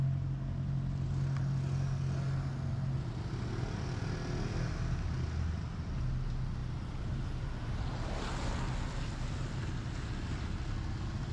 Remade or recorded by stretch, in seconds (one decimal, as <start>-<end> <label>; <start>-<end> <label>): 0.0-11.3 recorded

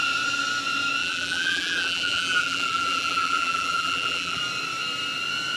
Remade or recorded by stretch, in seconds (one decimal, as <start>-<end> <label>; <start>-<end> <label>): 0.0-1.0 recorded; 1.0-4.4 remade; 4.4-5.6 recorded

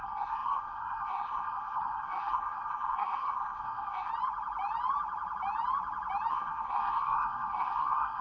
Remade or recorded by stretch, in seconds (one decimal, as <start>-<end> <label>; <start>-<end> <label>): 0.0-4.1 remade; 4.1-6.3 recorded; 6.3-8.2 remade

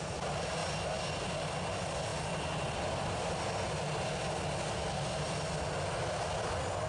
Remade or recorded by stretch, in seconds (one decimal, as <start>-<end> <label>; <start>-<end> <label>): 0.0-6.9 recorded

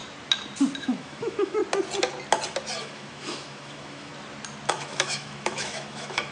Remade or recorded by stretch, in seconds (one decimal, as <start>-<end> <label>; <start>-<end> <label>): 0.0-0.8 recorded; 0.8-1.6 remade; 1.6-2.8 recorded; 2.8-4.1 remade; 4.1-4.7 recorded; 4.7-6.3 remade

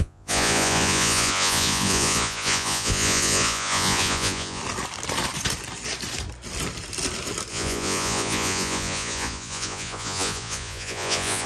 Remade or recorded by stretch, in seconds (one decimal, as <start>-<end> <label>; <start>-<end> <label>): 0.0-4.6 remade; 4.6-7.5 recorded; 7.5-11.5 remade